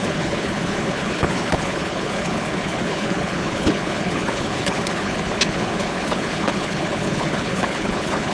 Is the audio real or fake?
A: fake